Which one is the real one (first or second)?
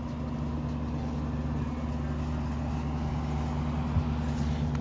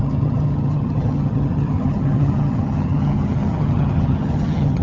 first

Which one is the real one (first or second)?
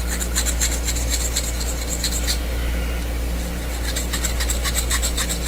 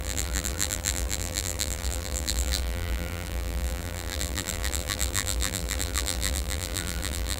first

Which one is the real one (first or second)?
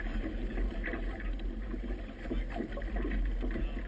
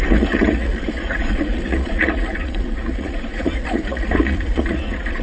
first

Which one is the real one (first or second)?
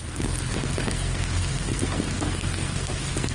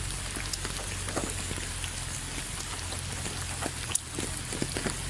second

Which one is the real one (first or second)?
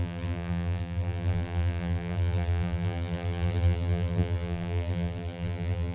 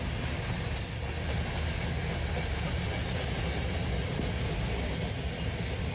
second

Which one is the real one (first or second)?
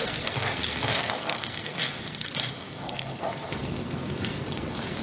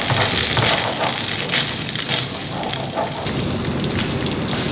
second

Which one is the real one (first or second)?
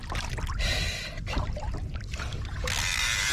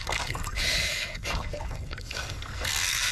first